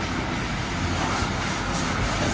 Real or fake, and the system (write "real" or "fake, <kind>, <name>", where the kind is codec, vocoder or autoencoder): real